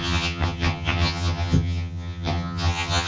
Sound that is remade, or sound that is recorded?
remade